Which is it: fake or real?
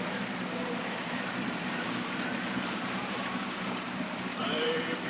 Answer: fake